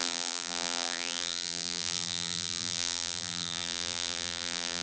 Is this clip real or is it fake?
fake